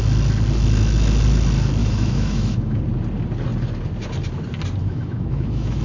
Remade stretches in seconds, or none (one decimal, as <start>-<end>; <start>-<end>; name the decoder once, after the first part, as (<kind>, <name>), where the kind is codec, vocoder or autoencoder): 1.8-2.8 (autoencoder, DAC-VAE); 4.8-5.8